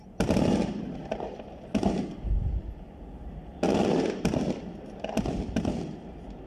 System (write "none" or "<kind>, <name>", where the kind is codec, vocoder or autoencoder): none